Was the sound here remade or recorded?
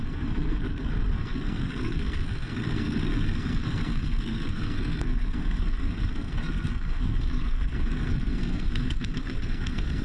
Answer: remade